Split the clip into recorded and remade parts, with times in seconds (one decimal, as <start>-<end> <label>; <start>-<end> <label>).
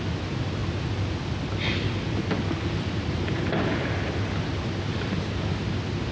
0.0-6.1 recorded